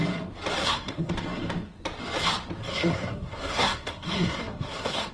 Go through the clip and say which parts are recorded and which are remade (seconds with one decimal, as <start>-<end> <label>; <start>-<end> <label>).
0.0-0.6 recorded; 0.6-1.1 remade; 1.1-2.7 recorded; 2.7-5.1 remade